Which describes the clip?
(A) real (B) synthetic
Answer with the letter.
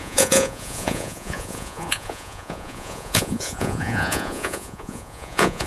B